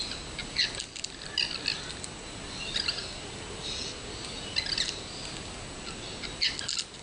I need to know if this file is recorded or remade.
recorded